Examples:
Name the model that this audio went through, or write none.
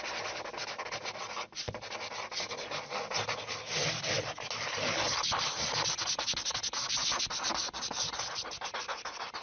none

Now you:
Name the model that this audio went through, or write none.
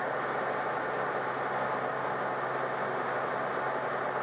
none